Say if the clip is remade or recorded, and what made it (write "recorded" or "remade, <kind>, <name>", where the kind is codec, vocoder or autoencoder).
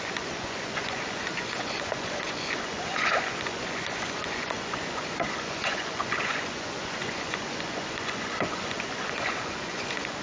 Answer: remade, vocoder, Vocos